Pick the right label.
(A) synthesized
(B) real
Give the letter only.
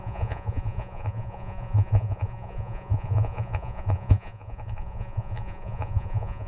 A